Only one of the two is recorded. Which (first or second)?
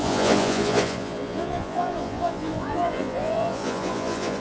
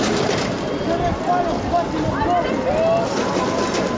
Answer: second